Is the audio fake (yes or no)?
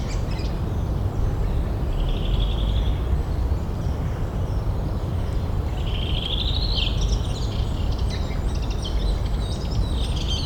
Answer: no